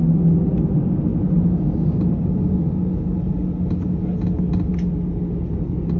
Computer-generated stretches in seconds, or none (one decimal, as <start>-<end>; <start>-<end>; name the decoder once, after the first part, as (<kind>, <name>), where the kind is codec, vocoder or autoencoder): none